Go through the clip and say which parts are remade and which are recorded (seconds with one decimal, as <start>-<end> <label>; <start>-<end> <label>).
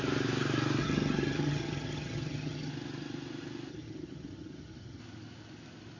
0.0-0.8 recorded; 0.8-2.7 remade; 2.7-3.7 recorded; 3.7-5.0 remade; 5.0-6.0 recorded